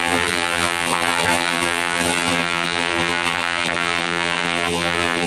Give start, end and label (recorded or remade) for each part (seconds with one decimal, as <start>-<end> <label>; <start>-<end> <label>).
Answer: 0.0-5.3 remade